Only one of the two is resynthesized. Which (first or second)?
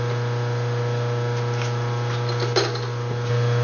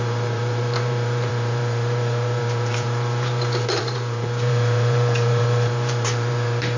second